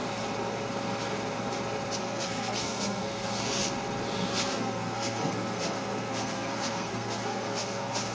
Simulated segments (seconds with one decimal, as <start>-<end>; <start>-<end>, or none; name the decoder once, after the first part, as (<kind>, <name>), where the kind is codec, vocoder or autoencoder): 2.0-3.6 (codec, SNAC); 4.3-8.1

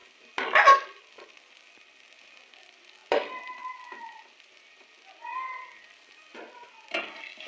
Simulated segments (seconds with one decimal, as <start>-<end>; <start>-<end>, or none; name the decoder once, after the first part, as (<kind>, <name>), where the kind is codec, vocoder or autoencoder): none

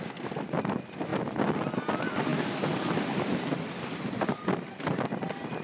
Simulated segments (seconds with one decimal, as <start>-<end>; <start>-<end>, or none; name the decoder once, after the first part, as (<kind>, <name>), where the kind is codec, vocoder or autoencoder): none

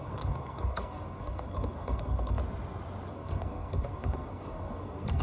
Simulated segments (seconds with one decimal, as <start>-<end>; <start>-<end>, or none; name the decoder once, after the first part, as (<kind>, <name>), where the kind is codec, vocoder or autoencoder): 0.0-2.4 (codec, SNAC); 3.1-5.2

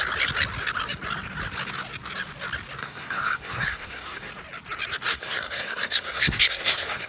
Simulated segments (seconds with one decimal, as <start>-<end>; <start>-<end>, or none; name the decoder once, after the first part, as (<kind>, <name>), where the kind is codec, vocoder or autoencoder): 2.8-4.3 (codec, SNAC); 5.1-7.1

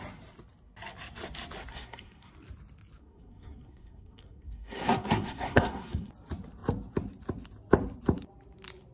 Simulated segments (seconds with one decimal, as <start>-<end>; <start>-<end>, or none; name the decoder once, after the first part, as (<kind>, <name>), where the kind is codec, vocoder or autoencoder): 1.7-2.3 (codec, SNAC); 3.0-6.1